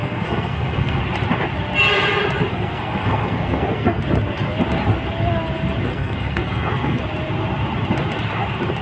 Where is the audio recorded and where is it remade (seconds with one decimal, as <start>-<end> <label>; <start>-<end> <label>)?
0.0-1.0 remade; 1.0-2.5 recorded; 2.5-4.0 remade; 4.0-5.9 recorded; 5.9-7.0 remade; 7.0-8.8 recorded